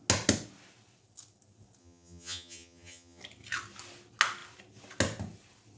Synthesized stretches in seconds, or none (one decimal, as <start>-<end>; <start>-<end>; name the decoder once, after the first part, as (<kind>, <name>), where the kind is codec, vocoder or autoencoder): 1.8-3.2 (vocoder, HiFi-GAN)